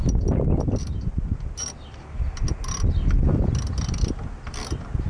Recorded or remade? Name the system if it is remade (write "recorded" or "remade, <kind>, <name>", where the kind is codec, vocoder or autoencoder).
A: recorded